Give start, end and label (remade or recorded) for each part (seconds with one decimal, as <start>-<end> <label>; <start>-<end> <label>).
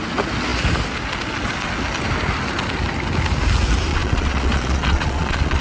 0.0-3.9 recorded; 3.9-5.6 remade